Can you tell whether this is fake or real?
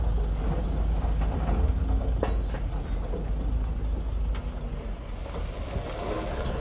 real